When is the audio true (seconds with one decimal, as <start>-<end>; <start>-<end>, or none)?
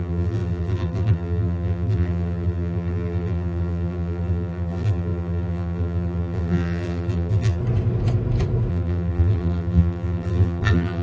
7.6-8.7